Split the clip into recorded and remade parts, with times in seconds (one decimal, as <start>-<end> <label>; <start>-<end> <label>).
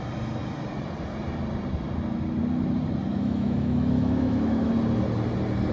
0.0-3.1 recorded; 3.1-4.7 remade; 4.7-5.7 recorded